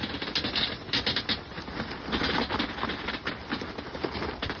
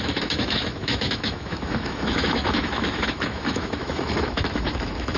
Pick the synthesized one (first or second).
second